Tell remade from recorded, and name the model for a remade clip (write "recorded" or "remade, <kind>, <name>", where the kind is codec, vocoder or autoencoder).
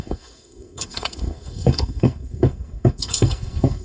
remade, codec, SNAC